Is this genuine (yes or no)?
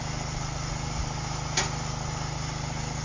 yes